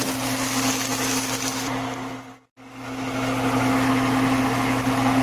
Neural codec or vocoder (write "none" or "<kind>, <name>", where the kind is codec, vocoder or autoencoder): none